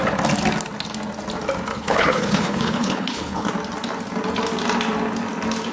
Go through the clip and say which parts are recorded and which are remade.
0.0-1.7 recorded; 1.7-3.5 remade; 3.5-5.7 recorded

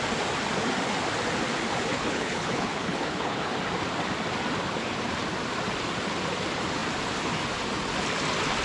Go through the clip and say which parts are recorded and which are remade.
0.0-1.9 recorded; 1.9-3.5 remade; 3.5-8.6 recorded

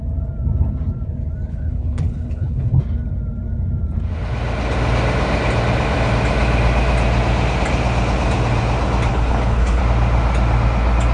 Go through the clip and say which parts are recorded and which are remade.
0.0-1.5 recorded; 1.5-2.8 remade; 2.8-9.1 recorded; 9.1-9.8 remade; 9.8-11.1 recorded

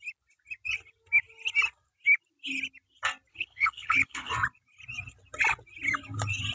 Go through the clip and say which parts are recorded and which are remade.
0.0-3.3 recorded; 3.3-4.3 remade; 4.3-6.5 recorded

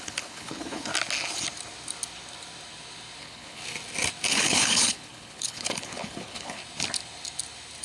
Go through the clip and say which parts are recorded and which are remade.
0.0-0.9 remade; 0.9-3.2 recorded; 3.2-3.6 remade; 3.6-4.3 recorded; 4.3-6.6 remade; 6.6-7.8 recorded